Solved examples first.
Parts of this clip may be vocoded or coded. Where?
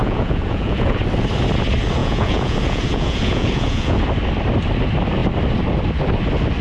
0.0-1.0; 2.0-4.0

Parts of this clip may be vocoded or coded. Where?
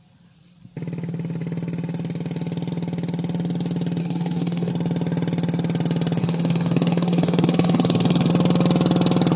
4.0-4.7; 6.2-8.3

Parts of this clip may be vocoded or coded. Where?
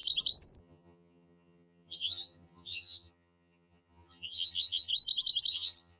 0.6-4.9; 5.5-6.0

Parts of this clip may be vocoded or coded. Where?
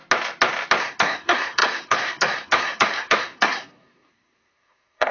0.8-5.1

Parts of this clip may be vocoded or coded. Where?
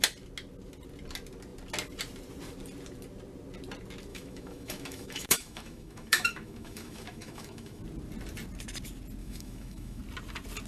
4.1-7.8; 9.2-10.0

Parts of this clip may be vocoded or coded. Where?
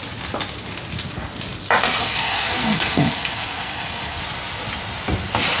2.0-4.2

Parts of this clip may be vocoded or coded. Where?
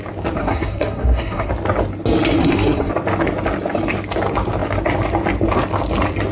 0.4-1.5; 2.4-2.9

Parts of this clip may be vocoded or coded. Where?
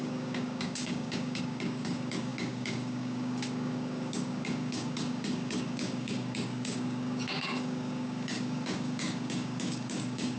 0.0-10.4